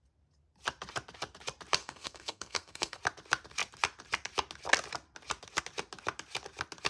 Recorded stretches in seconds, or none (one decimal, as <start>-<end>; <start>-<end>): 0.0-1.8; 3.0-6.9